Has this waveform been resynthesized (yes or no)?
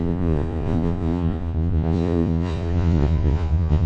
yes